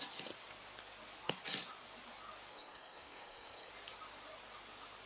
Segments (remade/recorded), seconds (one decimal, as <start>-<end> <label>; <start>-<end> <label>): 0.0-2.5 recorded; 2.5-3.7 remade; 3.7-5.1 recorded